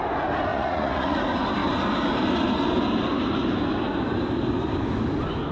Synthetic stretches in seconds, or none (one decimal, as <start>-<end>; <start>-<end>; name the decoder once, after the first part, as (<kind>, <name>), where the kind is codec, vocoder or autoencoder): 0.5-1.2 (vocoder, Vocos)

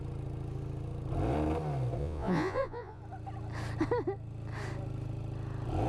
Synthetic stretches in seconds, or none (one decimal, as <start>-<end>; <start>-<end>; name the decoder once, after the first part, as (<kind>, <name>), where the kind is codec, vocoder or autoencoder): 2.0-3.0 (vocoder, Vocos)

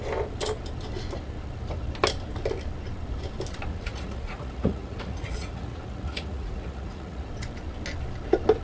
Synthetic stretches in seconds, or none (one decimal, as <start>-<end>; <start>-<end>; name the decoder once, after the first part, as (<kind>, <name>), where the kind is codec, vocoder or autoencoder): 3.7-7.3 (vocoder, Vocos)

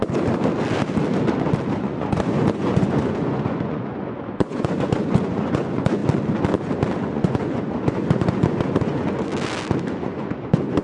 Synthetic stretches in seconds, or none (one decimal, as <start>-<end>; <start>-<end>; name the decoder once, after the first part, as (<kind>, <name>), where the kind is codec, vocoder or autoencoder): 1.8-6.0 (vocoder, Vocos); 7.0-9.3; 9.9-10.8

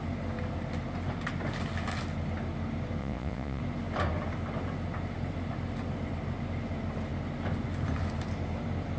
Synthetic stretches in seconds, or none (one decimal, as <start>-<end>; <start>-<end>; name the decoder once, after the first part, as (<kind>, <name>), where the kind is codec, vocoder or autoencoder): 3.0-3.6 (vocoder, Vocos)

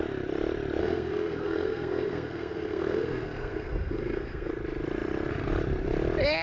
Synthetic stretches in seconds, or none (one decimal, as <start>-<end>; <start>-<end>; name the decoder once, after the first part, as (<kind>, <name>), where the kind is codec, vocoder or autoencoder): 0.8-4.5 (codec, SNAC)

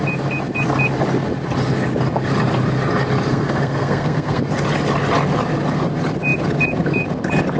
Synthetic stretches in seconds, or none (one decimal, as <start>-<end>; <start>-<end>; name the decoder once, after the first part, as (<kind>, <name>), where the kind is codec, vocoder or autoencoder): 3.3-4.4 (codec, SNAC)